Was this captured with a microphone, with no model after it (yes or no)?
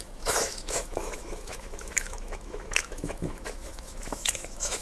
no